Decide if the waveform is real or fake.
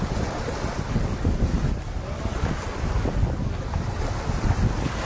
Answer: real